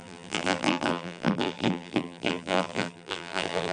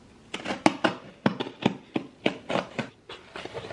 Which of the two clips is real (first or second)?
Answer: second